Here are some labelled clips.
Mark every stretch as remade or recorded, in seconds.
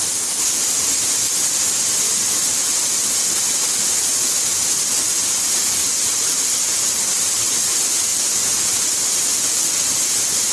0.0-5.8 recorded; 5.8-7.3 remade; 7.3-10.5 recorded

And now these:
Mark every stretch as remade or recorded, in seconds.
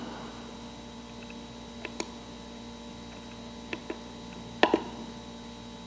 0.0-5.9 recorded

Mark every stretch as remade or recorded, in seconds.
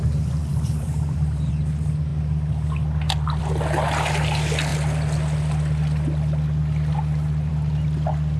0.0-0.5 recorded; 0.5-1.5 remade; 1.5-8.4 recorded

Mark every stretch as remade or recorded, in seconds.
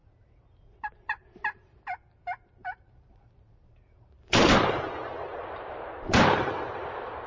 0.0-1.6 remade; 1.6-2.6 recorded; 2.6-6.2 remade; 6.2-7.3 recorded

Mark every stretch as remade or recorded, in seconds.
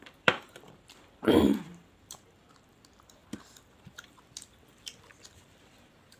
0.0-6.2 remade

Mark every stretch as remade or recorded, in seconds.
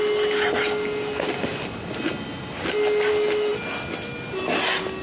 0.0-5.0 recorded